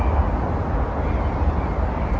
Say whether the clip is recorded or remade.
recorded